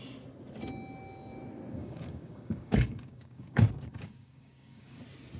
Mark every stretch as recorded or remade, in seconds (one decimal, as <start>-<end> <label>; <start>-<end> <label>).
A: 0.0-1.8 recorded; 1.8-5.0 remade; 5.0-5.4 recorded